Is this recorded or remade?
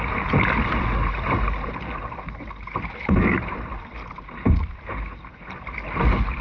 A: recorded